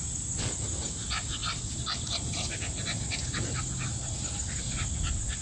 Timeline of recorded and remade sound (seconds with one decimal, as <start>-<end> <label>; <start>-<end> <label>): 0.0-5.4 recorded